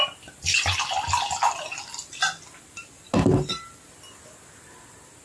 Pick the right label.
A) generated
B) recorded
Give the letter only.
B